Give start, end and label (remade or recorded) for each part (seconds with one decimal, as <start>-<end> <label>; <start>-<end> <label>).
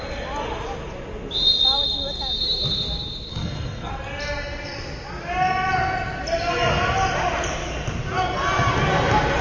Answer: 0.0-3.3 recorded; 3.3-3.9 remade; 3.9-9.4 recorded